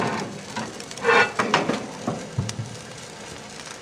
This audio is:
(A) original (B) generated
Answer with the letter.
B